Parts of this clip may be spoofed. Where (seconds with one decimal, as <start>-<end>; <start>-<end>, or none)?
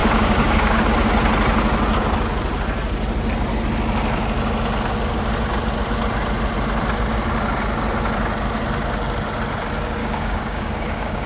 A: 0.0-0.8; 10.0-11.3